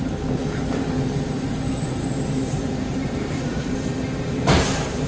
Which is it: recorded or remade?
remade